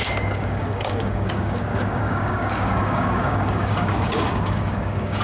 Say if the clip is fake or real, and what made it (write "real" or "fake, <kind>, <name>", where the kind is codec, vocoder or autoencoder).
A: fake, codec, DAC